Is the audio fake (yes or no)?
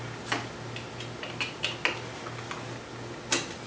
no